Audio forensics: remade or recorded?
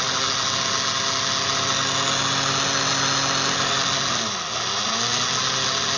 recorded